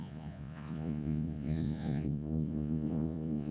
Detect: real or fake fake